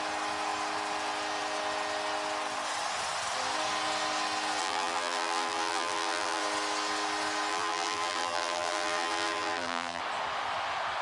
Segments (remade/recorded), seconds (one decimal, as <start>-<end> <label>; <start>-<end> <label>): 0.0-4.6 recorded; 4.6-6.4 remade; 6.4-7.5 recorded; 7.5-10.0 remade; 10.0-11.0 recorded